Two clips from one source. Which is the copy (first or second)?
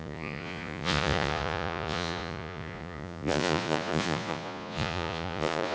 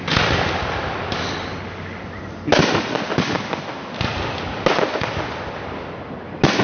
first